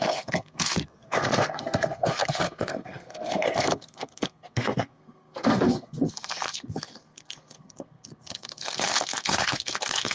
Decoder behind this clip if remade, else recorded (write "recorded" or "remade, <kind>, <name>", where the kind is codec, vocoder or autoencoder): remade, codec, SNAC